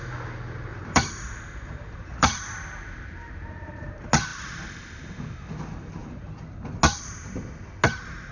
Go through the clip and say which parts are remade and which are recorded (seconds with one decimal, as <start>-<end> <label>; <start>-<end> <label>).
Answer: 0.0-0.7 recorded; 0.7-3.9 remade; 3.9-8.3 recorded